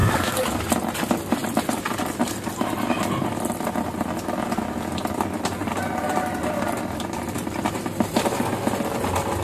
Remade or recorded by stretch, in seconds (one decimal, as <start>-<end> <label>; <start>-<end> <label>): 0.0-0.6 remade; 0.6-9.4 recorded